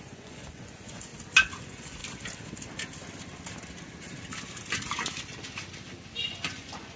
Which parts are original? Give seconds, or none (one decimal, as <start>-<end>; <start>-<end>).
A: 1.1-1.6; 2.0-6.2